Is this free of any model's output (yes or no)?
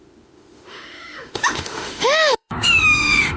no